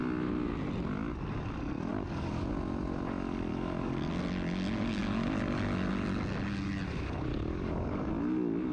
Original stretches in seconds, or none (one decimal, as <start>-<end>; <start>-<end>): 0.0-1.9; 2.5-3.5; 4.1-7.3; 8.1-8.7